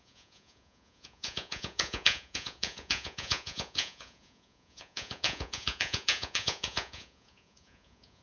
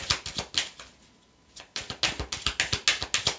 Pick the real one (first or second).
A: second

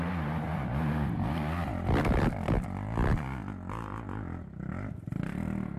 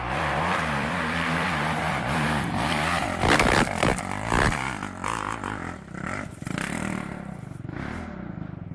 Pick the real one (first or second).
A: first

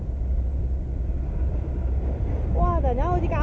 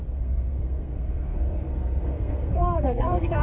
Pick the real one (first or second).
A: first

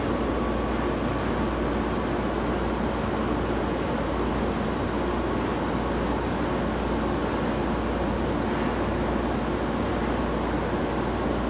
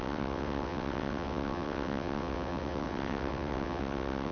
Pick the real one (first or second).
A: first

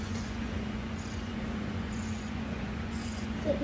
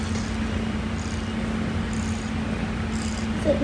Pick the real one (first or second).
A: second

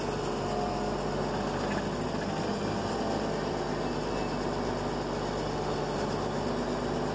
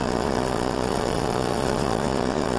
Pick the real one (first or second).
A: first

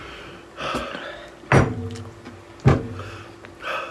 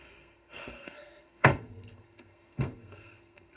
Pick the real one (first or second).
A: first